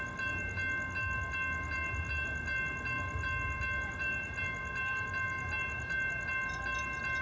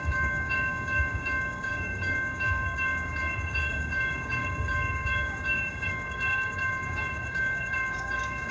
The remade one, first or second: second